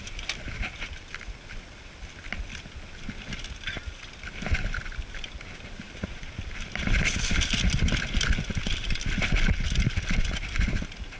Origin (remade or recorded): recorded